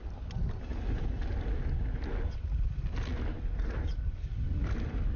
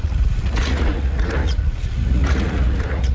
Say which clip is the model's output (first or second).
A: second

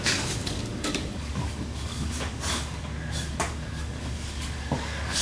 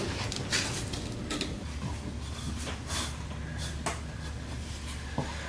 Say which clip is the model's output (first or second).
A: first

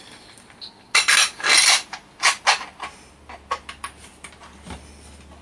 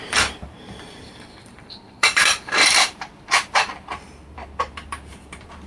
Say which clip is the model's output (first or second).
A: second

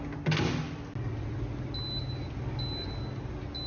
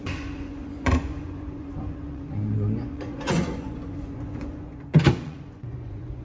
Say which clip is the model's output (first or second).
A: second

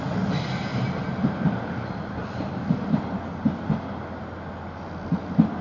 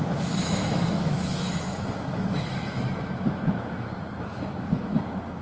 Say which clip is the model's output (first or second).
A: second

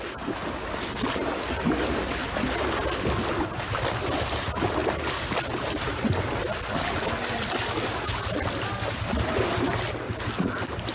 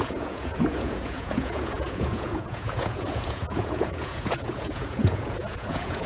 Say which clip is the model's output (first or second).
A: second